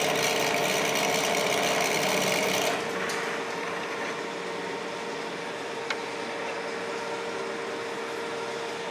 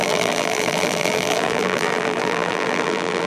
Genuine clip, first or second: first